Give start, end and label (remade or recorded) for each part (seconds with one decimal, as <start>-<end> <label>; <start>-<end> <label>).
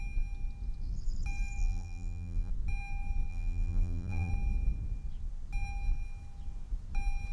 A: 0.0-1.6 recorded; 1.6-2.5 remade; 2.5-3.3 recorded; 3.3-4.3 remade; 4.3-7.3 recorded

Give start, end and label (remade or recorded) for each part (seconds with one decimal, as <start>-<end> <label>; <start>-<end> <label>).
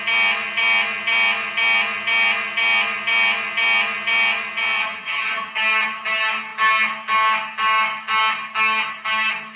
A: 0.0-4.8 recorded; 4.8-5.5 remade; 5.5-9.6 recorded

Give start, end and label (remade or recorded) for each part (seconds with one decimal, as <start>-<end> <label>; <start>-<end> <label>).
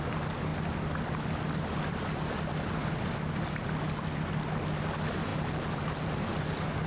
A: 0.0-5.3 recorded; 5.3-6.4 remade; 6.4-6.9 recorded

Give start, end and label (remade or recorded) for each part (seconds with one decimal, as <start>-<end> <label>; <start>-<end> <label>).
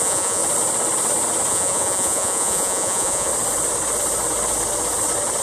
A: 0.0-0.4 remade; 0.4-1.5 recorded; 1.5-3.3 remade; 3.3-5.4 recorded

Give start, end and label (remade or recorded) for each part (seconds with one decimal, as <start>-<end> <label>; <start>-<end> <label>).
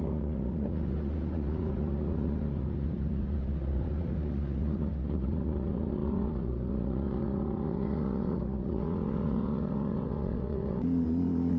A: 0.0-11.6 remade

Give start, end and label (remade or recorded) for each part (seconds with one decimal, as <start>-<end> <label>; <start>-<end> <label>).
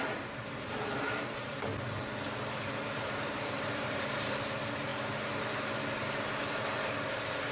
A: 0.0-1.7 remade; 1.7-2.9 recorded; 2.9-4.9 remade; 4.9-7.5 recorded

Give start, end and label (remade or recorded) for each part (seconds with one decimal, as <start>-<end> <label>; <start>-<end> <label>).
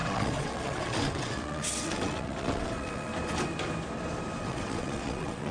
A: 0.0-3.1 remade; 3.1-4.4 recorded; 4.4-5.5 remade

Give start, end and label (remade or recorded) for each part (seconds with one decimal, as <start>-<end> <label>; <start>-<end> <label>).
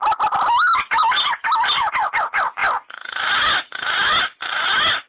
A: 0.0-5.1 recorded